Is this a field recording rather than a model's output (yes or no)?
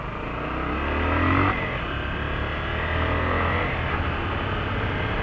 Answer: yes